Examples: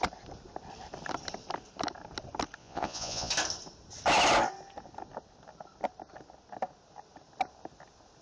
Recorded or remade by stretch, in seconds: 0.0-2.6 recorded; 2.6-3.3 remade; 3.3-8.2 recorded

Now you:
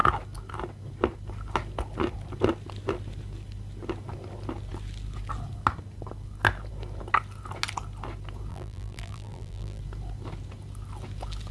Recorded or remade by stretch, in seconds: 0.0-8.5 recorded; 8.5-9.8 remade; 9.8-11.5 recorded